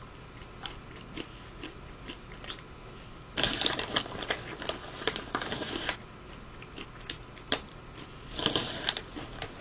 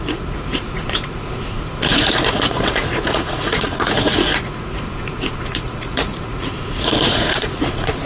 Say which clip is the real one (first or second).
first